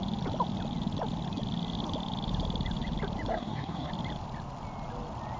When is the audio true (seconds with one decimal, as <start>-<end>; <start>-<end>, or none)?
0.0-3.3; 3.9-5.4